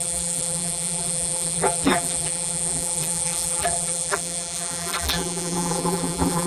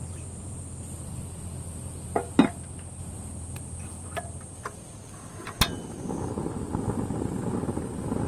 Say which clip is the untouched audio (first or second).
second